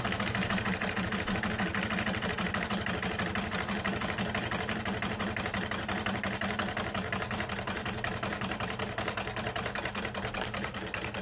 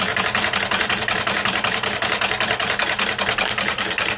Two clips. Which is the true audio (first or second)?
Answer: second